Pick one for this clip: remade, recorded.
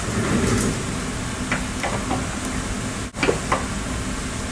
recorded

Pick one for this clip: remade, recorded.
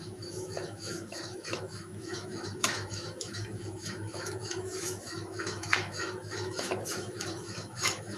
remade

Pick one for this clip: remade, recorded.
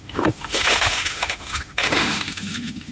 remade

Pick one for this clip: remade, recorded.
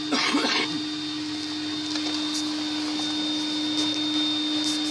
recorded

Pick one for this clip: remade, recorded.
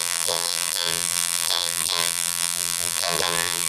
remade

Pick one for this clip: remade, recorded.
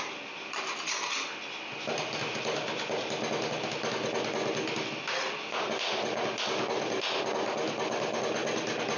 recorded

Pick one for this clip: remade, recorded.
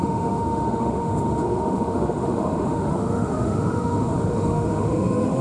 remade